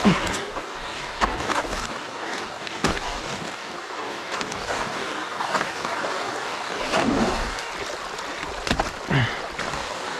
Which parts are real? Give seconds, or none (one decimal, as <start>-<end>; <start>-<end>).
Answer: 7.7-9.7